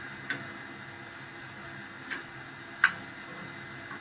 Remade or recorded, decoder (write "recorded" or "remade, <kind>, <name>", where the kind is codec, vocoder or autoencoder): recorded